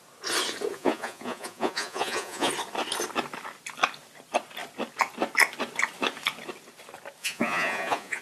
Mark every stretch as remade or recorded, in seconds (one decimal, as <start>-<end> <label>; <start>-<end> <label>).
0.0-0.7 recorded; 0.7-2.5 remade; 2.5-7.2 recorded; 7.2-8.2 remade